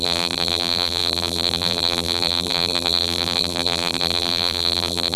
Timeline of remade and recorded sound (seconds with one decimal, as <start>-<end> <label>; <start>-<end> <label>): 0.0-5.2 remade

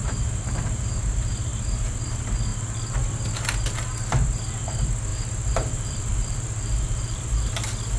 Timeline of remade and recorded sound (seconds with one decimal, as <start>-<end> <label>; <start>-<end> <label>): 0.0-0.9 remade; 0.9-2.5 recorded; 2.5-3.0 remade; 3.0-5.1 recorded; 5.1-7.5 remade; 7.5-8.0 recorded

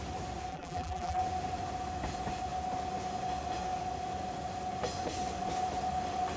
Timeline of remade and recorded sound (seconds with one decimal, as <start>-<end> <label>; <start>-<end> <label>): 0.0-0.5 recorded; 0.5-1.2 remade; 1.2-6.4 recorded

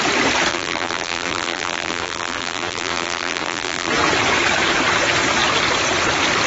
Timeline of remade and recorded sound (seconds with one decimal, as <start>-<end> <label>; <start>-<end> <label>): 0.0-0.5 recorded; 0.5-3.9 remade; 3.9-6.5 recorded

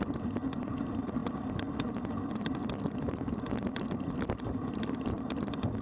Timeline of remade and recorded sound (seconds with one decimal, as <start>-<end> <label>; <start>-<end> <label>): 0.0-1.2 remade; 1.2-2.1 recorded; 2.1-5.8 remade